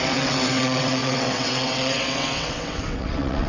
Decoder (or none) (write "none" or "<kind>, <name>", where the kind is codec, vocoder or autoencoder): vocoder, WaveNeXt